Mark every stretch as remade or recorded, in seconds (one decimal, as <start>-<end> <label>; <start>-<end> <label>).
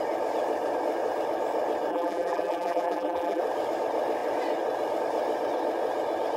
0.0-1.9 recorded; 1.9-3.4 remade; 3.4-6.4 recorded